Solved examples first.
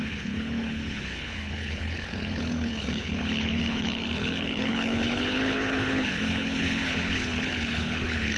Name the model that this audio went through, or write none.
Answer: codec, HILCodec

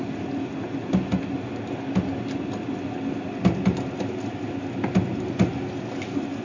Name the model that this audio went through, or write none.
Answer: none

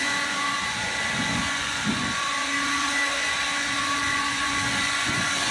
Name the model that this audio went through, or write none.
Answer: vocoder, Vocos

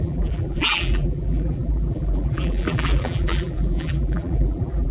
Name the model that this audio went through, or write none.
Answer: vocoder, BigVGAN v2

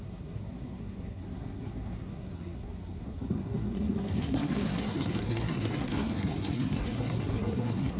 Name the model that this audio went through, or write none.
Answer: codec, SNAC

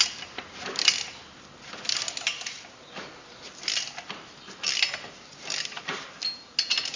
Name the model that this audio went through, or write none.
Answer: none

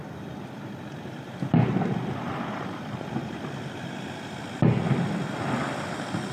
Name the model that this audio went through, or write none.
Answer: none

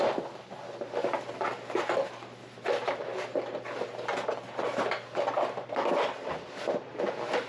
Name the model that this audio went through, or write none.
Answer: none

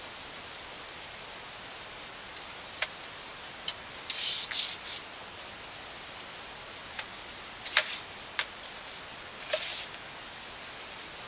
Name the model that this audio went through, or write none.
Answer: none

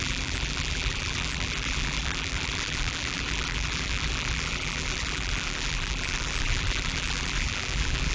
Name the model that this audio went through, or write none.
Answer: vocoder, BigVGAN v2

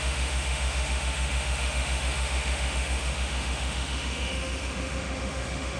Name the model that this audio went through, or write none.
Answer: autoencoder, DAC-VAE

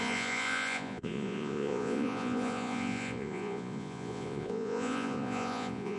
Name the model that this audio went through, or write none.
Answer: vocoder, Vocos